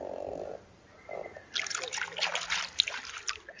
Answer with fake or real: real